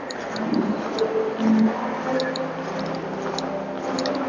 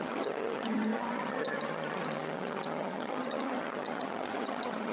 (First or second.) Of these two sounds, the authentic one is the first